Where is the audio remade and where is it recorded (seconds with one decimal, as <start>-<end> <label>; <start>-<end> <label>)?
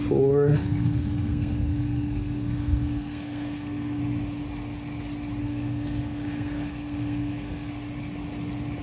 0.0-0.5 recorded; 0.5-4.0 remade; 4.0-5.4 recorded; 5.4-7.7 remade; 7.7-8.8 recorded